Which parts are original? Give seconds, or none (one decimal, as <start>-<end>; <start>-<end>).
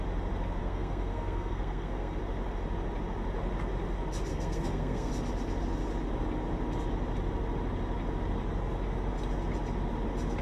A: 0.0-0.6; 2.2-4.3; 5.1-10.4